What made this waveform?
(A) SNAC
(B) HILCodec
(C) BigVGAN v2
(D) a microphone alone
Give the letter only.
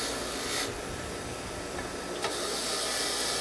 D